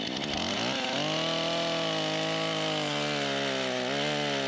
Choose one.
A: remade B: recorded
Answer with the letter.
B